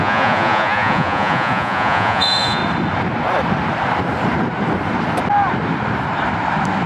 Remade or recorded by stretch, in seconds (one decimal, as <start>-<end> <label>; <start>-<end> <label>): 0.0-2.6 remade; 2.6-6.9 recorded